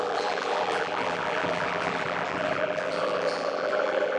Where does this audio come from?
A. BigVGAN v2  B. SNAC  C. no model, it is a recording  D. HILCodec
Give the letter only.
A